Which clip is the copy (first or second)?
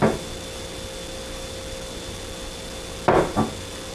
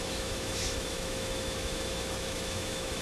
second